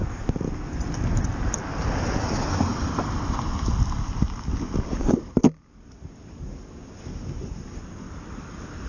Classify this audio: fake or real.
real